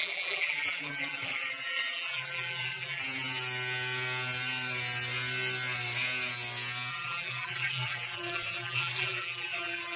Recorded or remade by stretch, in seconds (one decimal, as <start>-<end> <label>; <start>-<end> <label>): 0.0-3.0 remade; 3.0-6.9 recorded; 6.9-10.0 remade